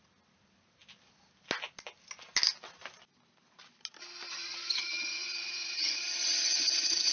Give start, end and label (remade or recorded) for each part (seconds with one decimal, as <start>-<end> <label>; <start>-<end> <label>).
0.0-4.3 recorded; 4.3-7.1 remade